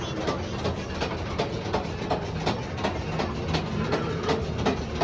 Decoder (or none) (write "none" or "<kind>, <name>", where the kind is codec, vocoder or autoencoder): none